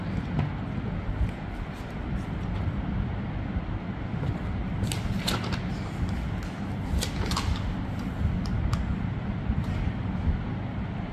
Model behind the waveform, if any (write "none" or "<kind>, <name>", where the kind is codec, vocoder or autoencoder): none